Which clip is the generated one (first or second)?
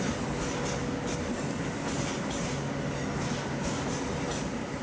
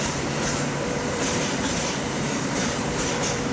second